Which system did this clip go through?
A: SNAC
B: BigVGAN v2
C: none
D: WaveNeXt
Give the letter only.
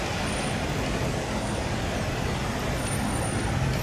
C